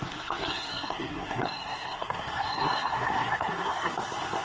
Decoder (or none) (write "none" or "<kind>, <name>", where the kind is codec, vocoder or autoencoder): codec, SNAC